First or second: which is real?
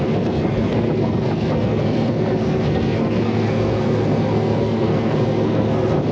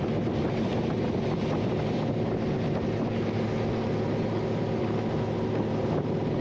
second